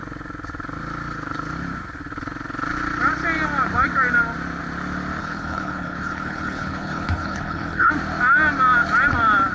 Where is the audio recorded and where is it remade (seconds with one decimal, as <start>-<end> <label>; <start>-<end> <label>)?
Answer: 0.0-5.2 recorded; 5.2-7.9 remade; 7.9-9.5 recorded